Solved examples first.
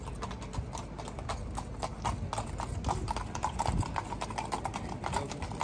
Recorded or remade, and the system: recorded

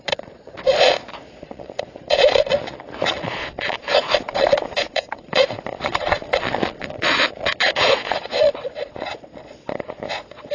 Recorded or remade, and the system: remade, vocoder, Vocos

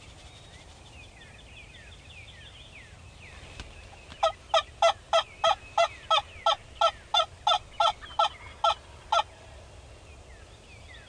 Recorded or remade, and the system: recorded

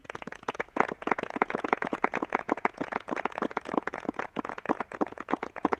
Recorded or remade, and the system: remade, vocoder, Vocos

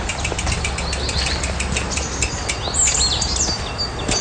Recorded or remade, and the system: recorded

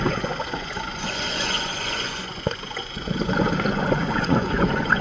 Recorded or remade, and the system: remade, vocoder, Vocos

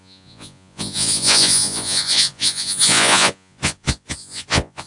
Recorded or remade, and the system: remade, vocoder, Vocos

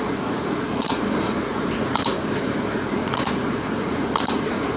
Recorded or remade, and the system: remade, vocoder, Vocos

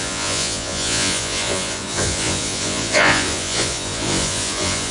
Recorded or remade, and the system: remade, vocoder, Vocos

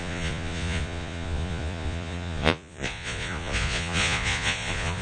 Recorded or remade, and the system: remade, vocoder, Vocos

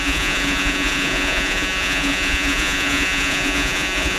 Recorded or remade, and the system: remade, vocoder, Vocos